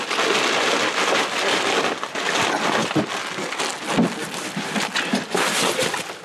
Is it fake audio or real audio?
real